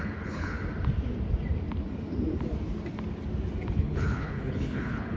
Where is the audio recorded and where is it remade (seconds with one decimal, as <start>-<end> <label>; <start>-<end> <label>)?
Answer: 0.0-0.6 remade; 0.6-3.7 recorded; 3.7-5.2 remade